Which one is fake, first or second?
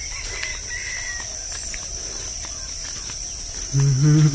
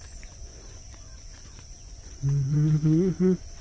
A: second